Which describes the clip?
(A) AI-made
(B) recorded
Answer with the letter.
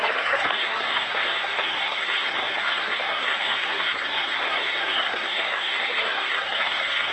A